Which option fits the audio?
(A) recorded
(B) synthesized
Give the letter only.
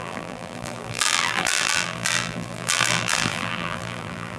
B